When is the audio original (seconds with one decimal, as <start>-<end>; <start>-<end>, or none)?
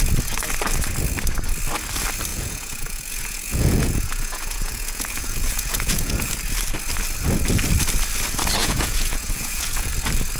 0.0-2.3; 6.3-8.6; 9.9-10.4